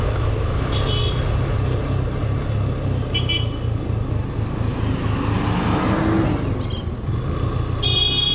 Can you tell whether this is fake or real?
real